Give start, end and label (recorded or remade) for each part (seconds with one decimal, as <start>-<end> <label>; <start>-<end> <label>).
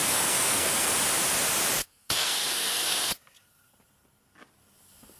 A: 0.0-0.9 remade; 0.9-1.8 recorded; 1.8-3.1 remade; 3.1-5.2 recorded